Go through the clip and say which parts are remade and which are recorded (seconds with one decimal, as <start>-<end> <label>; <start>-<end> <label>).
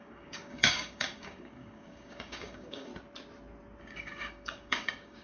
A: 0.0-2.9 remade; 2.9-3.8 recorded; 3.8-5.2 remade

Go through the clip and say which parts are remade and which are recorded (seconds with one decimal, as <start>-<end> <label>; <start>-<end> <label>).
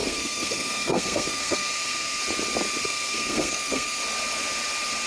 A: 0.0-2.2 remade; 2.2-2.8 recorded; 2.8-4.0 remade; 4.0-5.1 recorded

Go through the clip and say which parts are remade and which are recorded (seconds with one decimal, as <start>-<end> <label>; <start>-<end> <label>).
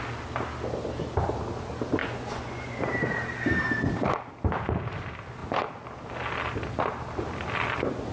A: 0.0-2.0 recorded; 2.0-2.8 remade; 2.8-8.1 recorded